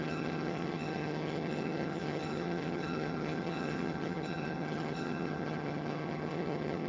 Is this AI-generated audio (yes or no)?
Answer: yes